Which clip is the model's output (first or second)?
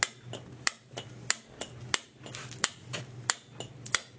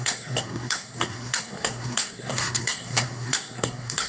second